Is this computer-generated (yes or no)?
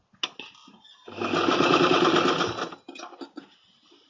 no